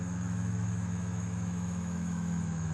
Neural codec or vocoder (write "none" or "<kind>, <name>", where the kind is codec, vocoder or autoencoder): autoencoder, DAC-VAE